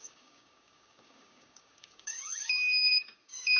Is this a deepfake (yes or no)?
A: yes